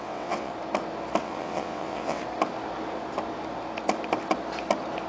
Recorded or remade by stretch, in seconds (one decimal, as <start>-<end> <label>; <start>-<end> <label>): 0.0-0.5 remade; 0.5-1.2 recorded; 1.2-2.2 remade; 2.2-5.1 recorded